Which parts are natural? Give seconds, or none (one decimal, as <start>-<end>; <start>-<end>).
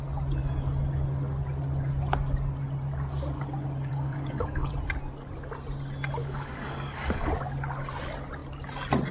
0.0-3.9; 4.7-6.2; 7.3-9.1